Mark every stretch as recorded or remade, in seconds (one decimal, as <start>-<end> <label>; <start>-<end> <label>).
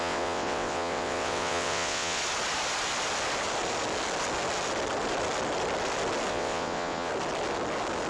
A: 0.0-2.2 remade; 2.2-6.3 recorded; 6.3-7.1 remade; 7.1-8.1 recorded